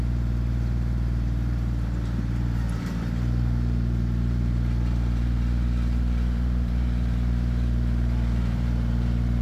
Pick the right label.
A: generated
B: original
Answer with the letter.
A